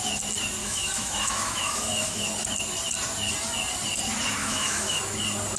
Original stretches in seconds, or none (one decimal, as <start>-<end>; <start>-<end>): 0.0-0.6; 2.2-4.4; 5.0-5.6